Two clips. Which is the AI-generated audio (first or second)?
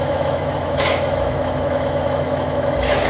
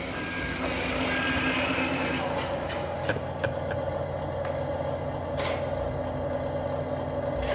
first